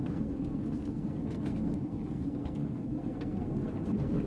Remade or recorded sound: remade